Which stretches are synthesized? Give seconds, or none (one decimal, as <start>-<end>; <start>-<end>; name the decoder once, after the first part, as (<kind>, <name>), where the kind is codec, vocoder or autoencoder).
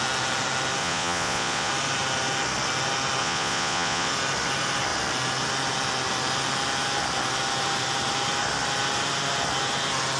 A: 0.8-1.7 (vocoder, Vocos); 3.2-4.1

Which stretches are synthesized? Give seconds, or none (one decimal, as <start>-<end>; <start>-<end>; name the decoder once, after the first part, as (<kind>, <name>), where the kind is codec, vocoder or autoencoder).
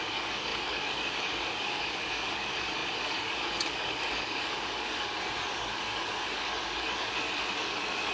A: 0.0-8.1 (codec, DAC)